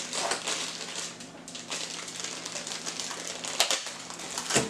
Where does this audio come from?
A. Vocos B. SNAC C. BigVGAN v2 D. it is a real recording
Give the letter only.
D